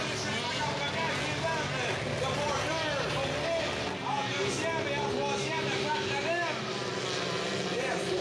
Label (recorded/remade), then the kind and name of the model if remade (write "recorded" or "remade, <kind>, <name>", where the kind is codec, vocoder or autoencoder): recorded